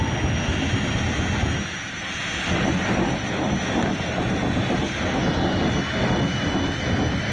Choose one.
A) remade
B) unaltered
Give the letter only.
B